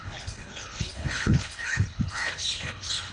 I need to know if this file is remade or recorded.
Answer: remade